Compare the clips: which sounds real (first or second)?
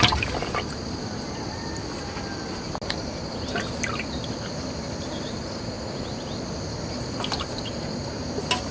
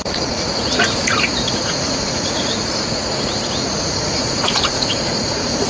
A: first